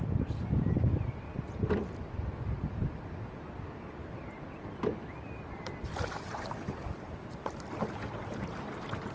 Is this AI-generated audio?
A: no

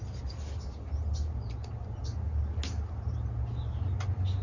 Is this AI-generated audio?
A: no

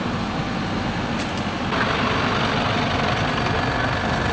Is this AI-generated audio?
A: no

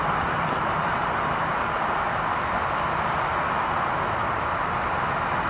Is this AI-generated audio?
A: no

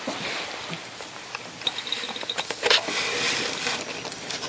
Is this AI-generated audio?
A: no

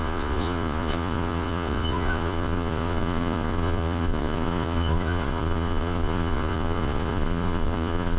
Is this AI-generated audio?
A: yes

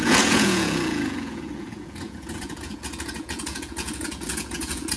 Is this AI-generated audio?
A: yes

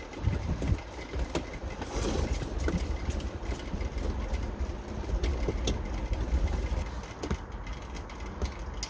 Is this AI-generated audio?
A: no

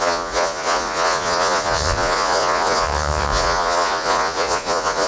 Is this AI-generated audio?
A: yes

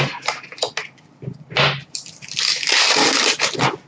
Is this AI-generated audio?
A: no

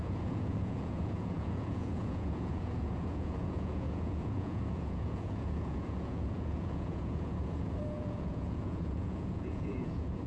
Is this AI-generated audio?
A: yes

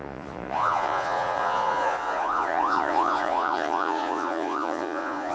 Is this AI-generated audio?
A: yes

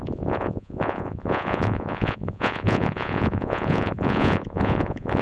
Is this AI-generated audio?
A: yes